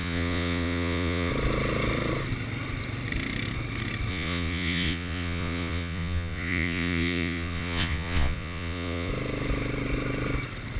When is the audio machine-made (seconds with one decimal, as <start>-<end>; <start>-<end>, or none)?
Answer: 0.0-1.3; 4.1-9.1